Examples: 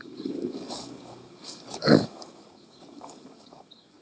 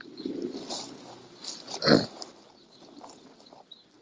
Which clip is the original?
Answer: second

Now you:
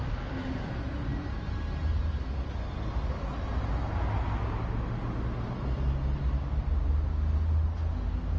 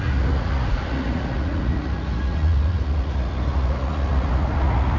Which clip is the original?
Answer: first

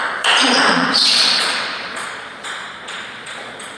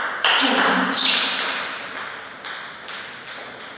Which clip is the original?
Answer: second